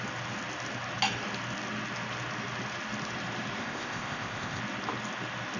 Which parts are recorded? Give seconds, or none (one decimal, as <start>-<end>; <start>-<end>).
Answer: 0.0-3.6; 4.6-5.6